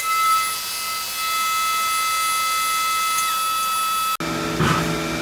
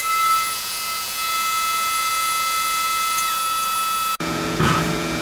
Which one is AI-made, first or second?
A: second